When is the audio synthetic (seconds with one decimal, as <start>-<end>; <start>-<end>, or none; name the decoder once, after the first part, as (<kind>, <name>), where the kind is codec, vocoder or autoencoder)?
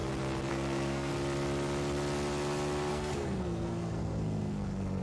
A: 0.5-1.1 (codec, SNAC); 2.9-5.0